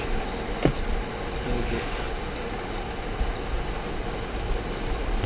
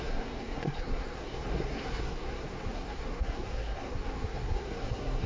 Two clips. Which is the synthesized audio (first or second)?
second